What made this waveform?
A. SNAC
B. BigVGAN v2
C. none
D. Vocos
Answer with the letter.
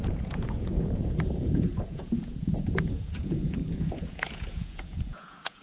D